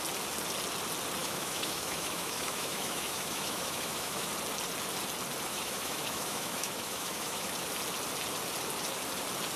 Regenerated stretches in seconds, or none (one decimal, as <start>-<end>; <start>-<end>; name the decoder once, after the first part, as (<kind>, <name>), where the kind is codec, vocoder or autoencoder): 1.2-4.3 (autoencoder, DAC-VAE); 5.5-7.5